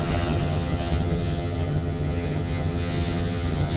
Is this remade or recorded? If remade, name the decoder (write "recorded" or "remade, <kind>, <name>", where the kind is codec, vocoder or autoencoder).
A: remade, vocoder, HiFi-GAN